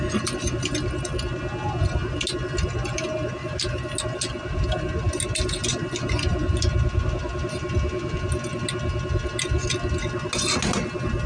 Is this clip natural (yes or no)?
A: yes